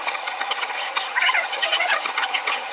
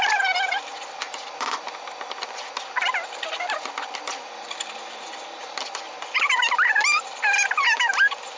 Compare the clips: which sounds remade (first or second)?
first